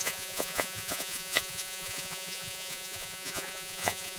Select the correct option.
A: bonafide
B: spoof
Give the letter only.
B